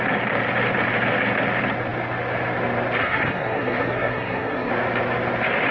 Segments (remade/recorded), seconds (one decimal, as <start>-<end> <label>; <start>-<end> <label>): 0.0-3.0 recorded; 3.0-4.7 remade; 4.7-5.7 recorded